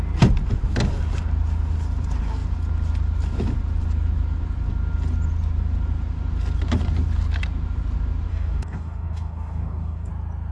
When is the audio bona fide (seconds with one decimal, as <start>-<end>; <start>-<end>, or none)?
0.0-8.3; 10.1-10.5